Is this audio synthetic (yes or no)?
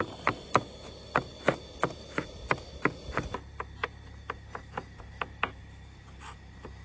no